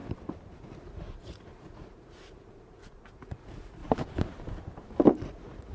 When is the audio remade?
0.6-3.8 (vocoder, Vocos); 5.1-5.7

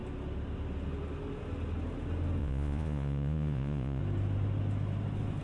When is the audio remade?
2.4-4.0 (vocoder, Vocos)

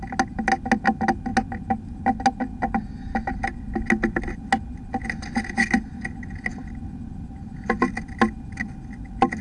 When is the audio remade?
none

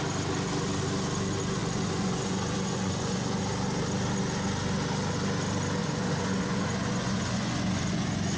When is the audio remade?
1.6-3.4 (vocoder, Vocos); 5.8-8.4

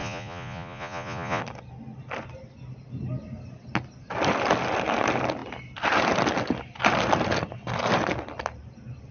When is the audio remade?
0.0-1.4 (vocoder, Vocos)

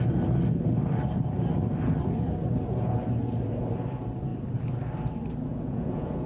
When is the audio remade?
5.5-6.3 (vocoder, Vocos)

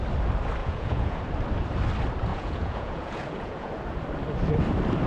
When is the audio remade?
0.6-1.2 (vocoder, Vocos); 2.3-3.7